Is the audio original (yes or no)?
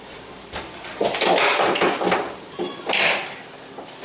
yes